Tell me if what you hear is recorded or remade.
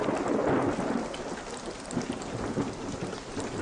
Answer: recorded